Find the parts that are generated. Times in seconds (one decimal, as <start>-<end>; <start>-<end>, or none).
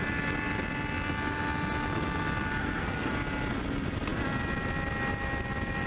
2.6-3.1